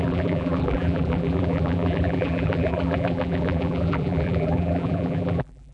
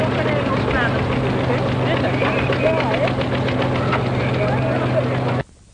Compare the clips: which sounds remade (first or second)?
first